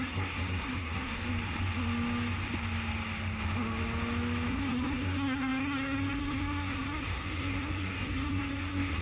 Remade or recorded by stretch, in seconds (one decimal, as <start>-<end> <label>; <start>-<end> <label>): 0.0-1.2 remade; 1.2-4.5 recorded; 4.5-9.0 remade